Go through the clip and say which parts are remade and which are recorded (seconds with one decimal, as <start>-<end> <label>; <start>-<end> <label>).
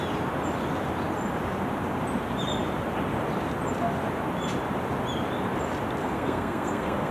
0.0-6.0 recorded; 6.0-7.1 remade